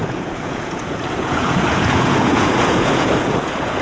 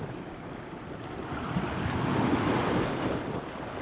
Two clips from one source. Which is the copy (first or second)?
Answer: first